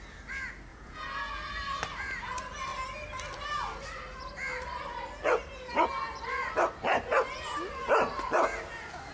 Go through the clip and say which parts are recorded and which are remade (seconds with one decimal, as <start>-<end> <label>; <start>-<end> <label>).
0.0-0.7 recorded; 0.7-1.3 remade; 1.3-9.1 recorded

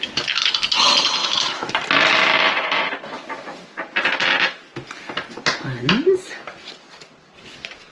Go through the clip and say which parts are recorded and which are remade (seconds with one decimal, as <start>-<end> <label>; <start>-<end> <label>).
0.0-1.2 recorded; 1.2-1.7 remade; 1.7-7.9 recorded

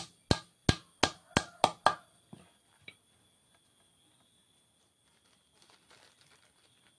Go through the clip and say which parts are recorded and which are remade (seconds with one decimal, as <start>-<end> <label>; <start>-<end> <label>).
0.0-7.0 recorded

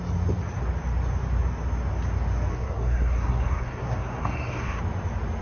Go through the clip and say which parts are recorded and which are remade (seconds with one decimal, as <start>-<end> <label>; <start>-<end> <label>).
0.0-2.5 recorded; 2.5-4.8 remade; 4.8-5.4 recorded

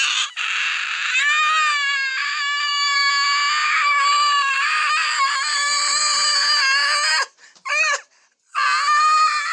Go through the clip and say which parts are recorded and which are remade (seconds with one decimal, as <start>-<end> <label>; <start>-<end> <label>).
0.0-1.7 recorded; 1.7-3.1 remade; 3.1-3.6 recorded; 3.6-6.0 remade; 6.0-9.5 recorded

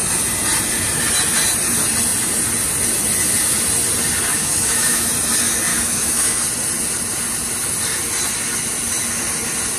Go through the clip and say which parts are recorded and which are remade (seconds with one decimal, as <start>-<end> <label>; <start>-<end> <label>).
0.0-4.3 recorded; 4.3-5.1 remade; 5.1-5.7 recorded; 5.7-6.4 remade; 6.4-9.8 recorded

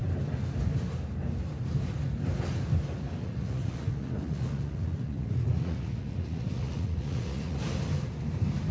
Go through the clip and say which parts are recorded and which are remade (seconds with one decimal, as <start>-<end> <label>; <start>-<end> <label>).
0.0-3.2 recorded; 3.2-7.6 remade; 7.6-8.7 recorded

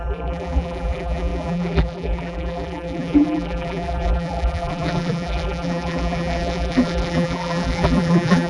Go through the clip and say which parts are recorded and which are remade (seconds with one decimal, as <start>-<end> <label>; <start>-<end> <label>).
0.0-8.5 remade